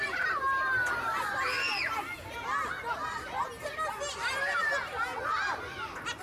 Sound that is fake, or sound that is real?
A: real